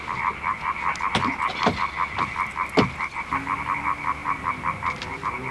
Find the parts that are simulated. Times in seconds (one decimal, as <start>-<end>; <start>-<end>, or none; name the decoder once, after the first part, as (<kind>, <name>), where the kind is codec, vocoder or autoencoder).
4.2-5.5 (vocoder, BigVGAN v2)